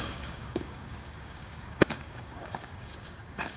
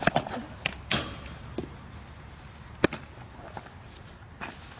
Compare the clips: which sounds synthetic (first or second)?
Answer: first